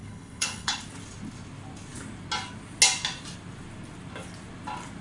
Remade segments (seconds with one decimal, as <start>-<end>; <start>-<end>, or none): 0.0-0.8